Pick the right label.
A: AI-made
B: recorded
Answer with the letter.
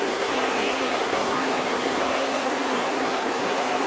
A